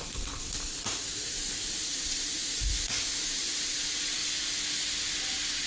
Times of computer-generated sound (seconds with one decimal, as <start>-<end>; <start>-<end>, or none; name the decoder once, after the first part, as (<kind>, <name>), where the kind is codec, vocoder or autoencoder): 0.0-4.2 (vocoder, Vocos)